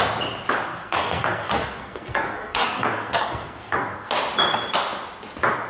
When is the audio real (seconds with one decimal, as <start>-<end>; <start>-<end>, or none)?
0.0-0.7; 4.1-5.7